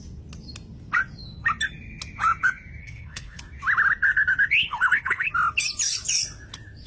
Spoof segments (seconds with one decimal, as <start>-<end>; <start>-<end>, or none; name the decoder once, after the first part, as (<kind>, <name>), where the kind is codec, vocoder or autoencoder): 2.8-3.4 (codec, HILCodec); 4.6-5.3